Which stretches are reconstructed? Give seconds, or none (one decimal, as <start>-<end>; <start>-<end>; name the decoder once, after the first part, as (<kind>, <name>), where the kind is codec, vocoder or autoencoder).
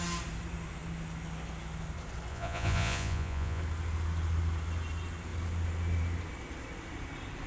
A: 2.3-3.6 (vocoder, Vocos)